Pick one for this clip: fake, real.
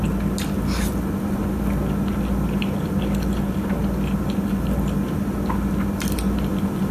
real